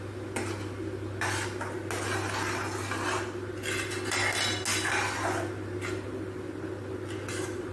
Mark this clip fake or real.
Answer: real